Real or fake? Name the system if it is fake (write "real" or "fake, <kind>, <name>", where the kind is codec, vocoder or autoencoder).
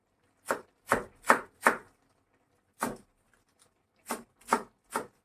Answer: real